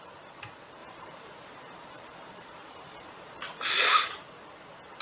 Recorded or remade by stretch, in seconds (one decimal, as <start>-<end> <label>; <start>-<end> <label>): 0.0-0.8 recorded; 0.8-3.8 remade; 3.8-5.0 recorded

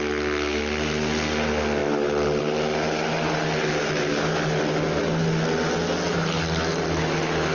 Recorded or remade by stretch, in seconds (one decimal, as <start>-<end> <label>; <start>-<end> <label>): 0.0-7.5 recorded

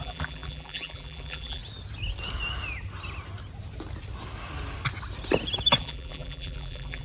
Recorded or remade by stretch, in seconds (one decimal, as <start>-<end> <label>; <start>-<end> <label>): 0.0-1.6 remade; 1.6-5.8 recorded; 5.8-7.0 remade